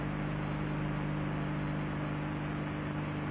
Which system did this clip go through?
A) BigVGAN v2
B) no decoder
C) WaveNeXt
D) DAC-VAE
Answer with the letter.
B